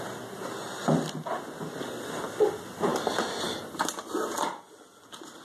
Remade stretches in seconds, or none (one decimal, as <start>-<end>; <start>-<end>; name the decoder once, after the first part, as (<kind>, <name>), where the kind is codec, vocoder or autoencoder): none